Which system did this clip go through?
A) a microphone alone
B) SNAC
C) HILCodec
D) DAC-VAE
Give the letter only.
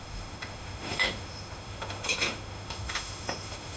D